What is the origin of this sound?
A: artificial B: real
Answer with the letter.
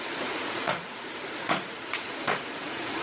A